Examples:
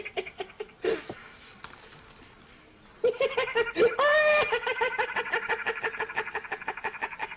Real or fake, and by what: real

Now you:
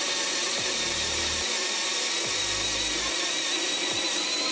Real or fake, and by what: real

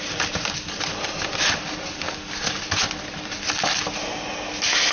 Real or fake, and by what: real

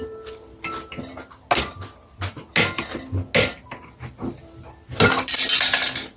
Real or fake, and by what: real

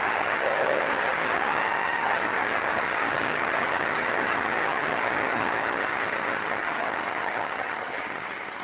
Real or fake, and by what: fake, vocoder, HiFi-GAN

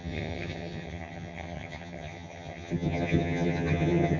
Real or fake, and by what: fake, vocoder, HiFi-GAN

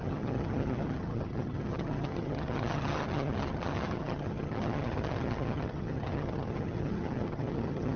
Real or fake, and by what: fake, vocoder, HiFi-GAN